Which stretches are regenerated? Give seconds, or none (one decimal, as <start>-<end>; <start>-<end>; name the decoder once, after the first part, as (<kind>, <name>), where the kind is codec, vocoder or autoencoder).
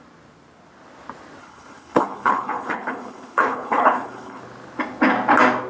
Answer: 1.4-4.4 (codec, HILCodec)